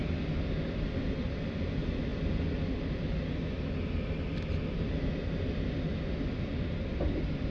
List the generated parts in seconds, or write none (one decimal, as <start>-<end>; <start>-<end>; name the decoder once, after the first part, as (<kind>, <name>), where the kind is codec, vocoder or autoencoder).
1.2-2.1 (vocoder, BigVGAN v2); 6.4-7.5